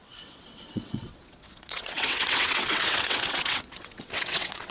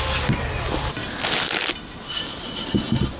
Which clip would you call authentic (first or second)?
second